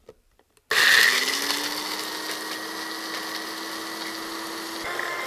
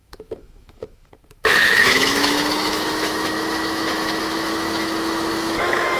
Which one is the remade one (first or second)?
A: second